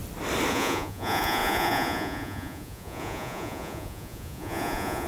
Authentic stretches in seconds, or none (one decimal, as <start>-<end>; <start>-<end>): 0.0-0.5